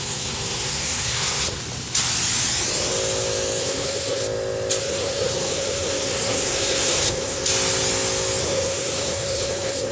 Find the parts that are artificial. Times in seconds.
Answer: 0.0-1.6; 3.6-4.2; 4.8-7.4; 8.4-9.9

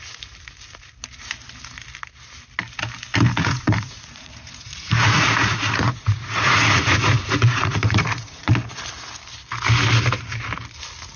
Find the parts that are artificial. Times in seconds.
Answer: 3.4-8.5

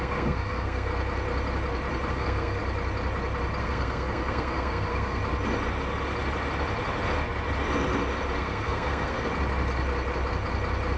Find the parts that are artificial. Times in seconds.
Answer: 0.0-0.9; 2.1-2.6; 3.6-5.2; 8.4-9.3

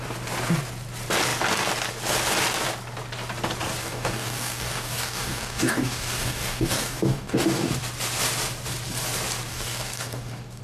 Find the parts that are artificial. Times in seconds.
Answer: 3.8-7.7; 9.5-10.6